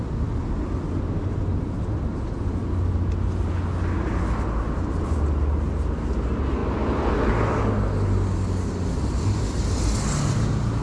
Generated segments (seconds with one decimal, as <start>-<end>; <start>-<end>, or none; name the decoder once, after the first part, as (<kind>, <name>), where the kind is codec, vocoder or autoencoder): none